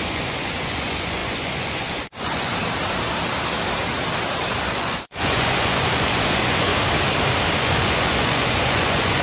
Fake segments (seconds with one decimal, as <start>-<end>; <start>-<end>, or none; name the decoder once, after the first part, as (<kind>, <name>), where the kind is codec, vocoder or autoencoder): 0.0-2.5 (vocoder, Vocos); 4.7-6.7; 7.6-9.2